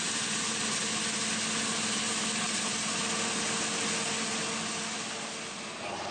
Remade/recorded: recorded